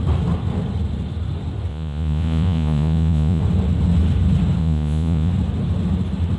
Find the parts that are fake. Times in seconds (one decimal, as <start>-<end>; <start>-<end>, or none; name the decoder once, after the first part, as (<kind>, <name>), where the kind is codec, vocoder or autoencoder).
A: 1.7-3.4 (vocoder, Vocos); 4.6-5.3